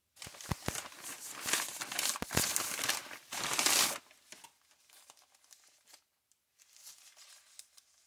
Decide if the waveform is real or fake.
real